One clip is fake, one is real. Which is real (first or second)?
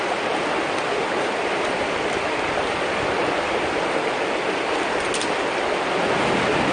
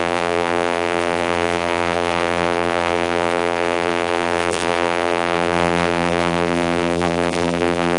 first